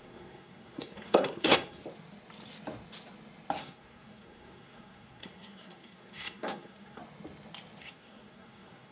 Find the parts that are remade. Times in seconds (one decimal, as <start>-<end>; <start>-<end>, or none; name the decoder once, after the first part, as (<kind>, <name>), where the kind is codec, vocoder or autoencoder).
0.0-1.8 (codec, SNAC); 3.6-7.0; 7.8-8.9